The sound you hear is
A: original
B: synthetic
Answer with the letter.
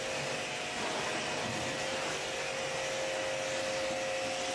A